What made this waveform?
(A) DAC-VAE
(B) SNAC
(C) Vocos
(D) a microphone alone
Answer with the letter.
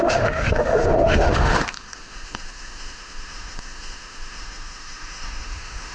A